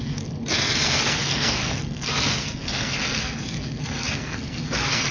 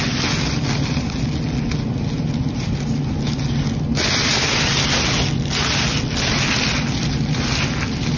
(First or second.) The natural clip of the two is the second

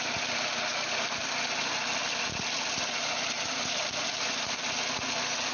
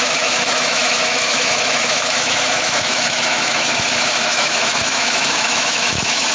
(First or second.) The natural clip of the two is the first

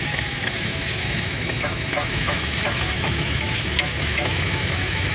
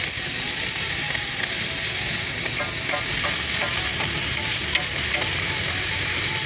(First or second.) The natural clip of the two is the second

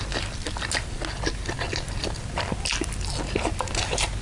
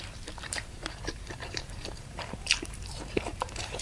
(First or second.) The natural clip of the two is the first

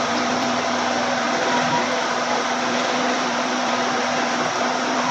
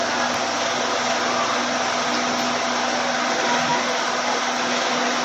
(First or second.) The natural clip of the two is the second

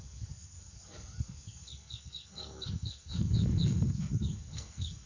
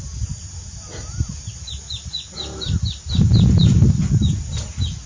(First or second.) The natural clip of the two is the second